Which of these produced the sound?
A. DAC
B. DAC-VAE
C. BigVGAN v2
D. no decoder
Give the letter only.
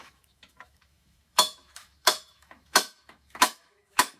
B